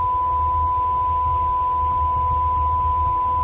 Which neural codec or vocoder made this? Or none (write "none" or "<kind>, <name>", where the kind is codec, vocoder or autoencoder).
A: none